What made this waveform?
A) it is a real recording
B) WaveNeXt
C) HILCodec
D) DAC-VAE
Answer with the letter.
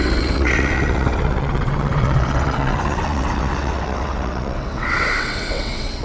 B